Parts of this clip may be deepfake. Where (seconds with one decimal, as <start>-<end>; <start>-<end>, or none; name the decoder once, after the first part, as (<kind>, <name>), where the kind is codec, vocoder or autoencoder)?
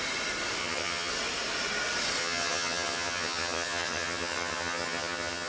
0.6-1.1 (vocoder, HiFi-GAN); 2.2-5.5